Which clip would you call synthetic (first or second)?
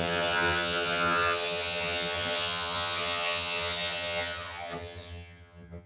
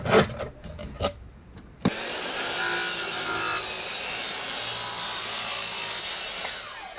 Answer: first